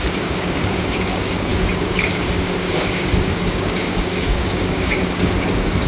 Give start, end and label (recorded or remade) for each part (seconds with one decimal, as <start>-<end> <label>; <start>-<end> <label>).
0.0-5.9 remade